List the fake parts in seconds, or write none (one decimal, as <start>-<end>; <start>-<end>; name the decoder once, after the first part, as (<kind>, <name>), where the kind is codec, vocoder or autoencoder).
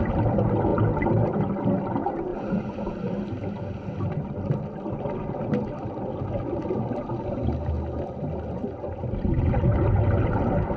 2.3-3.0 (vocoder, BigVGAN v2)